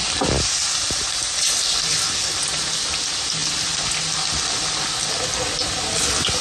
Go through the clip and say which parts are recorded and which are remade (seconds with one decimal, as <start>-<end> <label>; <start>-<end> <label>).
0.0-6.4 recorded